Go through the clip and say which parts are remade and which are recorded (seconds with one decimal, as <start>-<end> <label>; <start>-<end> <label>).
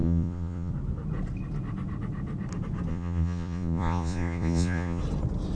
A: 0.0-0.7 remade; 0.7-2.9 recorded; 2.9-5.0 remade; 5.0-5.6 recorded